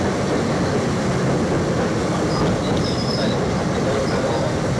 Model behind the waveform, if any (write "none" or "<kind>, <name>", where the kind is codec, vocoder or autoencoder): none